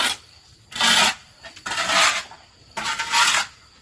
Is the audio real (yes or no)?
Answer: yes